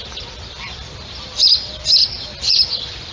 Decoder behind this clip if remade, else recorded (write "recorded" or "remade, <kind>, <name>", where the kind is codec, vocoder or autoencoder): remade, vocoder, BigVGAN v2